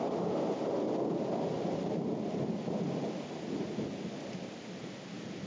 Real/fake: real